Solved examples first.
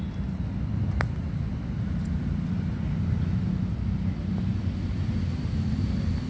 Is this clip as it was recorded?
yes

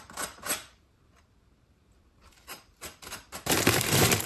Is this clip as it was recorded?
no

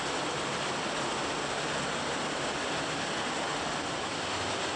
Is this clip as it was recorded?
yes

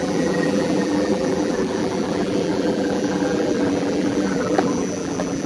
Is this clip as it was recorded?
no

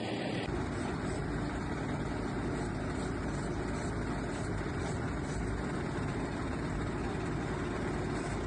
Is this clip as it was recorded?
no